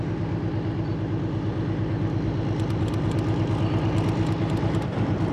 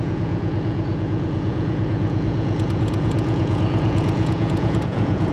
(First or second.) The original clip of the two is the first